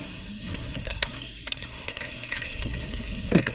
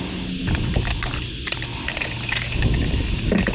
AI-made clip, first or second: first